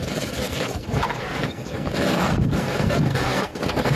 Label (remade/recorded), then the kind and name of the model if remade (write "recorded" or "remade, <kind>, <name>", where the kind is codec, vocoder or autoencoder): remade, codec, SNAC